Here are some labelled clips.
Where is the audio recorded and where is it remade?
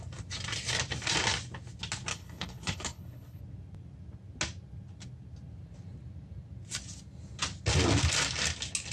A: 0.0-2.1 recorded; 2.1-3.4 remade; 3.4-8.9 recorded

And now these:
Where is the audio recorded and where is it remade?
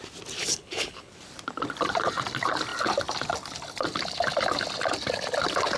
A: 0.0-0.4 recorded; 0.4-1.1 remade; 1.1-5.8 recorded